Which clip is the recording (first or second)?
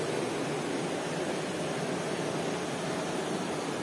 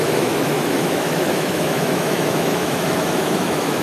first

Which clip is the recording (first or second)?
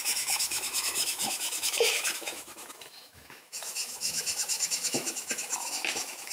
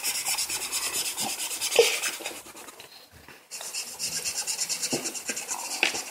second